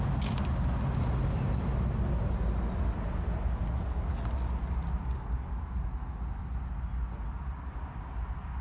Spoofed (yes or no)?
no